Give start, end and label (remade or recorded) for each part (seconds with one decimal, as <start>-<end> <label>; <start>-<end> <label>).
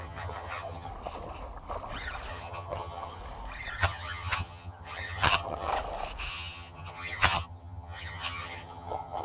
0.0-0.9 remade; 0.9-2.3 recorded; 2.3-3.2 remade; 3.2-3.8 recorded; 3.8-5.7 remade; 5.7-6.3 recorded; 6.3-9.2 remade